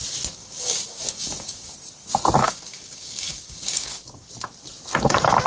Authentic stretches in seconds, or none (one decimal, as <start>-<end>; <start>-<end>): 0.0-0.4; 1.7-2.4; 4.3-5.5

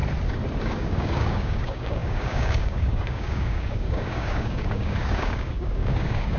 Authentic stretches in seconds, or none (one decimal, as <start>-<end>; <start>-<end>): 0.0-0.6

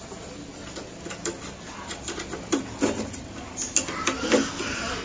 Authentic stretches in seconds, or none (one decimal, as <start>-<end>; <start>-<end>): 0.0-5.0

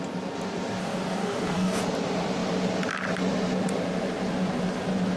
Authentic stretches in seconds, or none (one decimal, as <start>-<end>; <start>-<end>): 0.0-0.8; 1.8-5.2

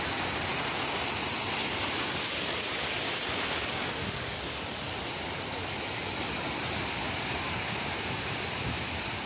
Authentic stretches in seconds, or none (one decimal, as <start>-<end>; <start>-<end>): 0.0-3.6; 5.0-9.3